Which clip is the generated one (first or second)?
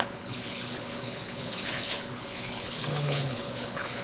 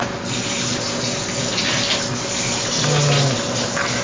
first